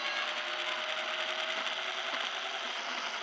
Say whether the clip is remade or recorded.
recorded